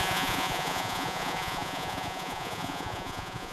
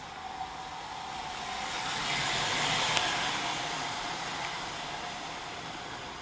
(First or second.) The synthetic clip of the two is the first